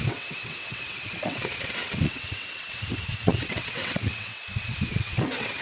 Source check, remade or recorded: remade